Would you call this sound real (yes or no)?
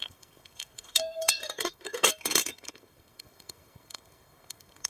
no